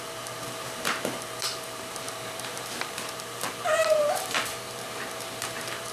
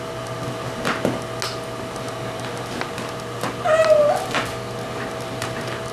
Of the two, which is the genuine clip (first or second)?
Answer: second